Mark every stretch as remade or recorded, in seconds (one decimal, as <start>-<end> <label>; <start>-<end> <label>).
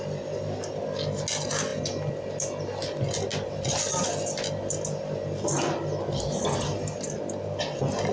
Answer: 0.0-8.1 recorded